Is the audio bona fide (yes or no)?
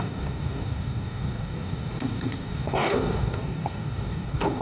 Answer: no